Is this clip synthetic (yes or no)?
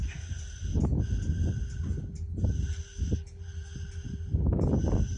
no